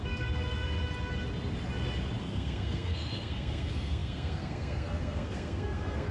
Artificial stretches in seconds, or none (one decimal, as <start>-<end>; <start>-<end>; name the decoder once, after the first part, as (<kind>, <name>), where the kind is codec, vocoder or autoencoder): 0.0-0.8 (codec, SNAC); 2.2-6.1